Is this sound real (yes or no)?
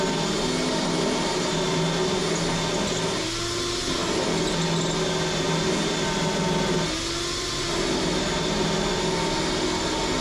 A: yes